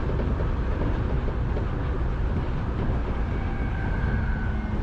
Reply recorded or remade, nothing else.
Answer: recorded